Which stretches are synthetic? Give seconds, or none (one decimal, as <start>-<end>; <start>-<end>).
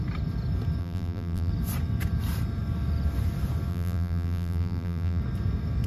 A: 0.8-1.5; 3.7-5.2